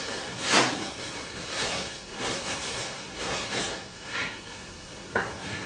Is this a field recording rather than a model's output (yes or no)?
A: no